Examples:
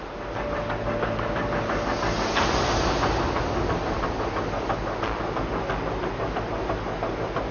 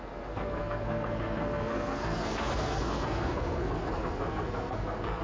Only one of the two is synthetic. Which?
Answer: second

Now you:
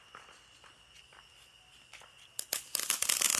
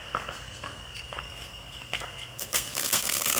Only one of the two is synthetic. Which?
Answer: second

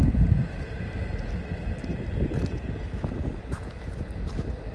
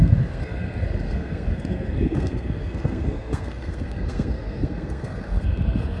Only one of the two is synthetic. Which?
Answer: second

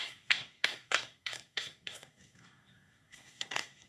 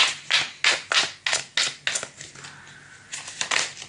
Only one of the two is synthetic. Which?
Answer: first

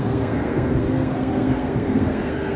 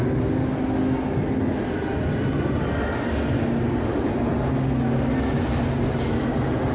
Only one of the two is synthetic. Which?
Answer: first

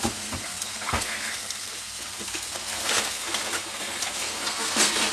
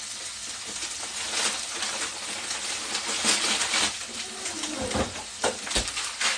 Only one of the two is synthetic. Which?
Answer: first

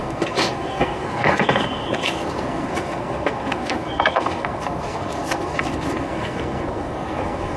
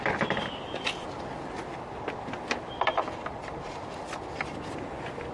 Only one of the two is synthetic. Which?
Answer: first